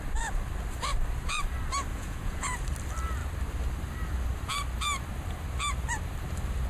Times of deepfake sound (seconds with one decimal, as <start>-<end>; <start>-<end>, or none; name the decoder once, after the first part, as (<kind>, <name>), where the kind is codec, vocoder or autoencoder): 1.9-2.6 (vocoder, Vocos)